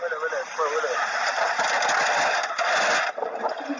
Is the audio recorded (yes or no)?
yes